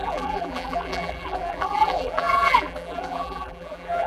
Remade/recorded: remade